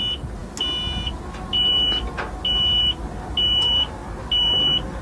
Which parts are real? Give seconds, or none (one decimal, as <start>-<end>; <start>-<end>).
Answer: 0.0-5.0